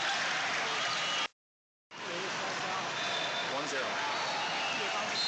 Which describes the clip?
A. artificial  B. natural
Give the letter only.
B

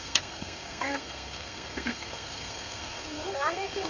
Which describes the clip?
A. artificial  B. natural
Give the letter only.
A